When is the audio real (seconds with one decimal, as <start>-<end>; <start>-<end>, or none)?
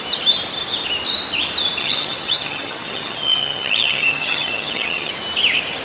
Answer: 0.0-1.8; 5.1-5.8